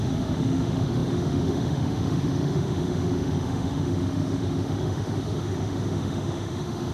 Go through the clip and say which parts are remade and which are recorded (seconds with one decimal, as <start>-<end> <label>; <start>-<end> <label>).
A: 0.0-6.9 remade